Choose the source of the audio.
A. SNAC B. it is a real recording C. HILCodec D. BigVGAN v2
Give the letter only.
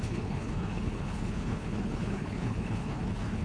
C